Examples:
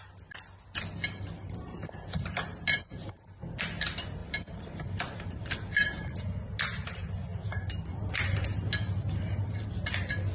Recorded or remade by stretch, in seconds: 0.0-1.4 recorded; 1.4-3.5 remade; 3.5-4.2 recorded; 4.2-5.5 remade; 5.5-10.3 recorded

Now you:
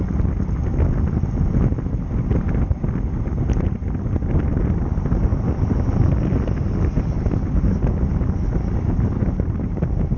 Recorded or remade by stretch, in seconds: 0.0-10.2 recorded

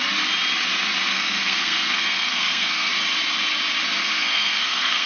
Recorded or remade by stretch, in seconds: 0.0-1.1 recorded; 1.1-2.9 remade; 2.9-4.0 recorded; 4.0-5.1 remade

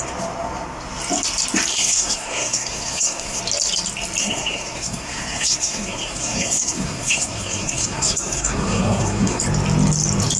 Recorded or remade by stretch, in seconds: 0.0-1.7 recorded; 1.7-3.4 remade; 3.4-4.2 recorded; 4.2-9.4 remade; 9.4-10.4 recorded

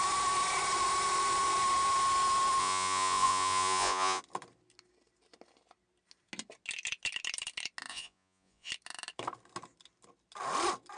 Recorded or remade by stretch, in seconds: 0.0-2.6 recorded; 2.6-4.2 remade; 4.2-7.9 recorded; 7.9-8.7 remade; 8.7-11.0 recorded

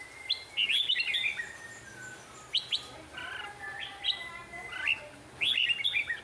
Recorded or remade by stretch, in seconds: 0.0-2.0 recorded; 2.0-3.9 remade; 3.9-6.2 recorded

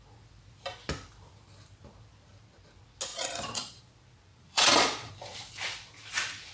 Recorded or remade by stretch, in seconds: 0.0-3.1 recorded; 3.1-3.8 remade; 3.8-4.3 recorded; 4.3-5.1 remade; 5.1-6.5 recorded

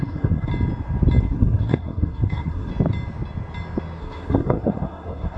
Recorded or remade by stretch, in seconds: 0.0-0.5 remade; 0.5-1.2 recorded; 1.2-2.7 remade; 2.7-4.0 recorded; 4.0-5.4 remade